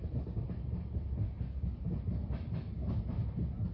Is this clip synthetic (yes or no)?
no